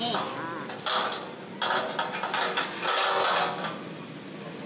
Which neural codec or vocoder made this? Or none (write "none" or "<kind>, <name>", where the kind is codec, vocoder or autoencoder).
none